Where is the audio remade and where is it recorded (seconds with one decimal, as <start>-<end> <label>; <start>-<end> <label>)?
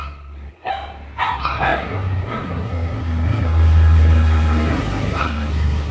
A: 0.0-0.7 remade; 0.7-1.2 recorded; 1.2-5.9 remade